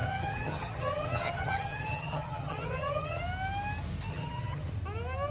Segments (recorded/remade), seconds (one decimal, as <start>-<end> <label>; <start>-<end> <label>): 0.0-3.2 remade; 3.2-4.1 recorded; 4.1-4.7 remade; 4.7-5.3 recorded